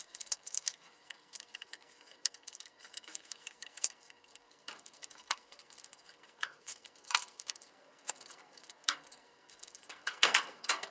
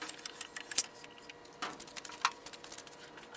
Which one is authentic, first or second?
second